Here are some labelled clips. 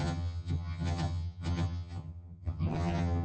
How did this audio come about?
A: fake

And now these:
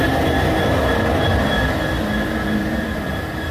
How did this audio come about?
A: real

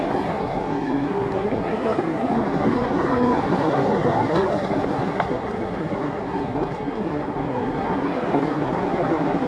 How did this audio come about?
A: fake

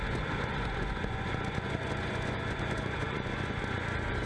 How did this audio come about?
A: fake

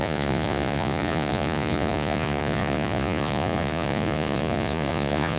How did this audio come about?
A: fake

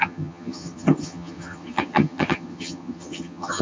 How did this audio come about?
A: fake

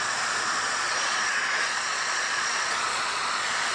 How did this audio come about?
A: fake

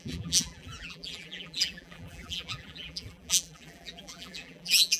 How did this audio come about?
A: fake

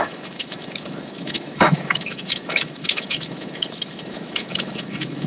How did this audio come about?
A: fake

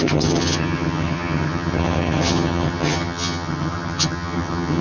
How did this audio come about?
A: fake